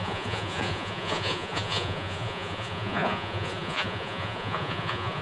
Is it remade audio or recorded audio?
remade